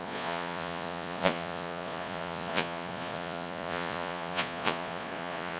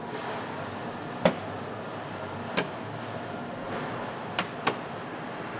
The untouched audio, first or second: second